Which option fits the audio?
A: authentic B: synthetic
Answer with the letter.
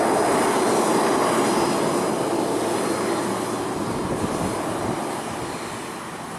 A